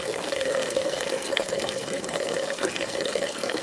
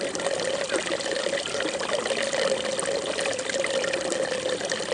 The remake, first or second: first